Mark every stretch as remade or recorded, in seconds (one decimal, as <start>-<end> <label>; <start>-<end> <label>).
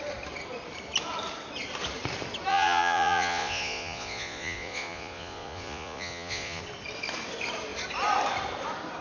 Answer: 0.0-2.5 recorded; 2.5-6.6 remade; 6.6-9.0 recorded